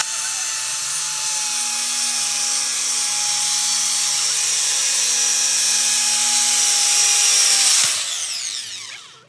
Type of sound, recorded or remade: recorded